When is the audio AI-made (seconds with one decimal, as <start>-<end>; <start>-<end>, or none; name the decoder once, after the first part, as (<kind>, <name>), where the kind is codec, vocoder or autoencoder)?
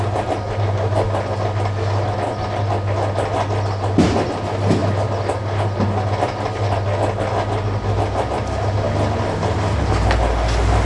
none